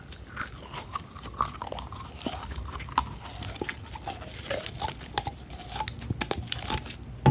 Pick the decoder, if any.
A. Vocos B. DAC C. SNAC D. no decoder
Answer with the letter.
D